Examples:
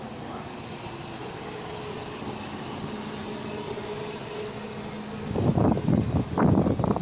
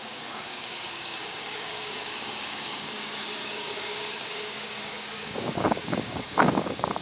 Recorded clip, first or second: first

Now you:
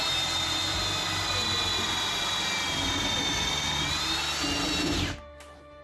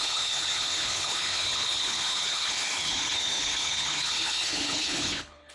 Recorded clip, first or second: first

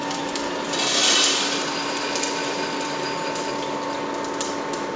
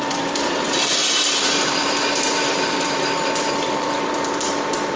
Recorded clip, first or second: first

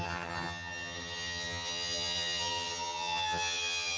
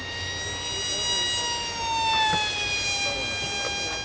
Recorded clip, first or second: second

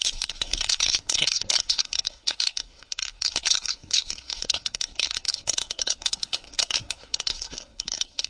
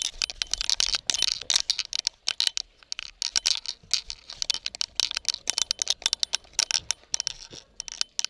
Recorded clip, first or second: second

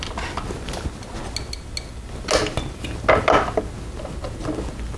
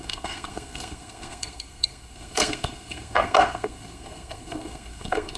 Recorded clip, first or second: first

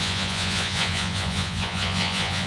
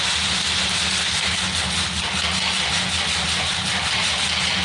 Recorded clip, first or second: second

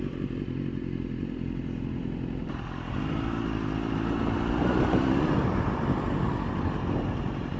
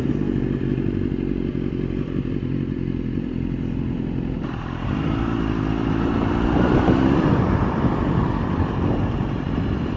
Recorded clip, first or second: first